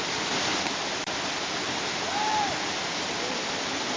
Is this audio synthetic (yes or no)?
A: no